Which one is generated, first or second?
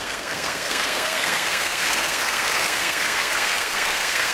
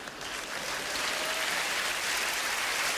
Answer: first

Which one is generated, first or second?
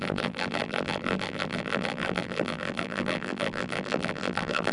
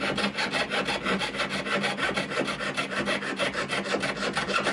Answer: first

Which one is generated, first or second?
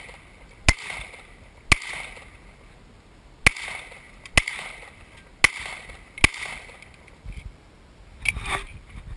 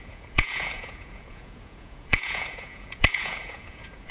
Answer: second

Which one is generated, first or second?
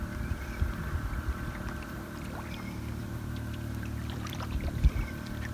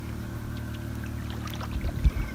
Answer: first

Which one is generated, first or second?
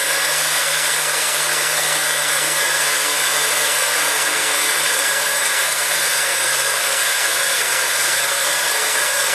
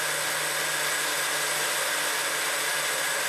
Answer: first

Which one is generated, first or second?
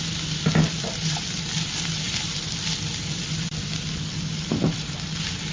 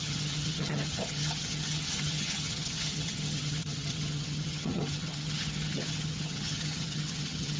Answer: second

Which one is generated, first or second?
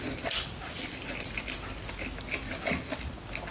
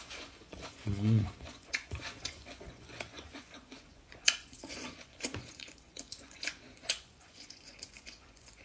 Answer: second